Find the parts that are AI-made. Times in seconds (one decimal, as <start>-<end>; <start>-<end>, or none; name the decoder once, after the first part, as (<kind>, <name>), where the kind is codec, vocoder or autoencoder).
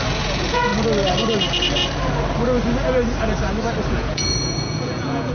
0.0-0.7 (vocoder, Vocos); 3.9-5.3